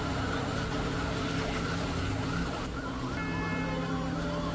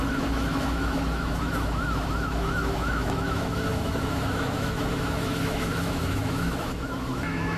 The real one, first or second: first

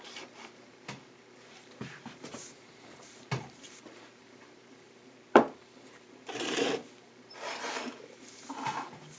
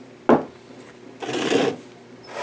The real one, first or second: second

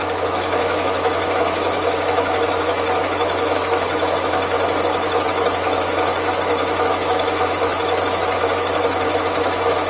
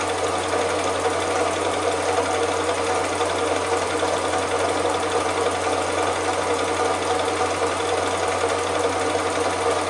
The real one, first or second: second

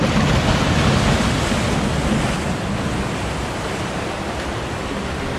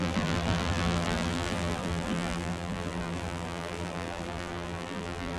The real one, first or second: first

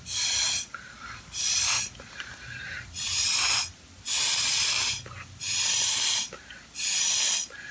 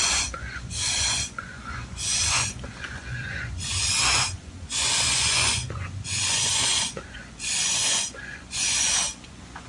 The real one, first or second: first